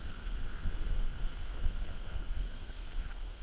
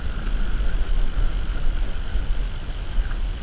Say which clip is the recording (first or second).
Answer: second